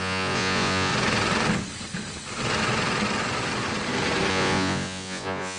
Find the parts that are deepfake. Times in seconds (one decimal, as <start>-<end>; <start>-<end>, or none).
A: 0.0-0.9; 4.3-5.6